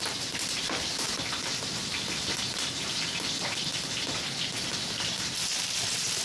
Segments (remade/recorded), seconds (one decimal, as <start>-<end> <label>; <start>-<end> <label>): 0.0-1.1 remade; 1.1-4.7 recorded; 4.7-6.2 remade